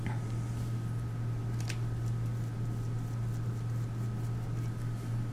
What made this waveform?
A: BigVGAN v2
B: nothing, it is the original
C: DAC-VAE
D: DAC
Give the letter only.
B